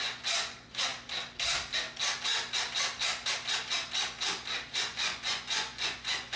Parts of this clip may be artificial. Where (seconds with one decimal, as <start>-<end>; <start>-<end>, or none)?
0.0-0.9; 4.7-6.4